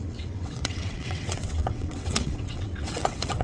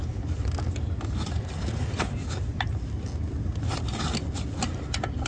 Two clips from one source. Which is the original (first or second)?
second